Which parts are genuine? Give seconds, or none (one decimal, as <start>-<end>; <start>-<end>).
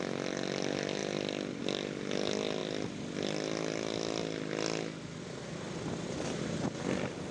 0.0-7.3